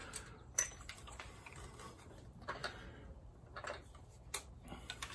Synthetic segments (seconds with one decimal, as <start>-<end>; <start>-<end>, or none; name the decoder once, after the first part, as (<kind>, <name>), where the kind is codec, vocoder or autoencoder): 0.0-1.7 (vocoder, BigVGAN v2)